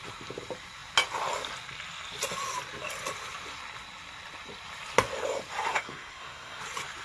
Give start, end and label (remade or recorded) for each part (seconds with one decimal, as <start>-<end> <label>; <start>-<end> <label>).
0.0-5.7 recorded; 5.7-6.6 remade; 6.6-7.0 recorded